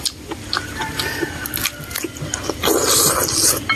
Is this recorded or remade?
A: recorded